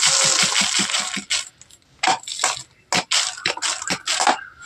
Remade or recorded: recorded